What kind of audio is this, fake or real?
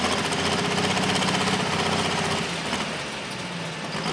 real